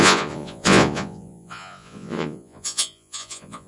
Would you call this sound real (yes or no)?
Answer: no